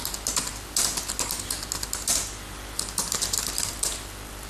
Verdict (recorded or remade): recorded